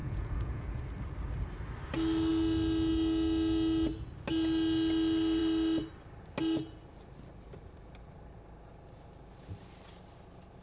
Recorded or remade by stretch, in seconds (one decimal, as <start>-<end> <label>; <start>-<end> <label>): 0.0-0.8 remade; 0.8-10.6 recorded